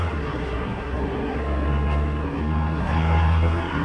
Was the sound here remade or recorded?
remade